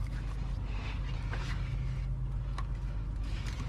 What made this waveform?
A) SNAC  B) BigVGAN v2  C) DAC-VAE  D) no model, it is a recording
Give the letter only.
D